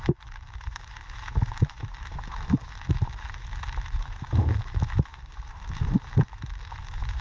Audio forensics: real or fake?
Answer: fake